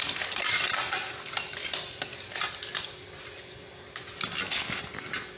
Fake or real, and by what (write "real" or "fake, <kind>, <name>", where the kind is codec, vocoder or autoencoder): real